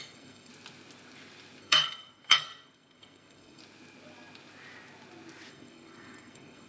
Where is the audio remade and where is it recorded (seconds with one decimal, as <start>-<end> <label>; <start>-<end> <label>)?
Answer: 0.0-0.5 remade; 0.5-1.6 recorded; 1.6-3.6 remade; 3.6-5.5 recorded; 5.5-6.7 remade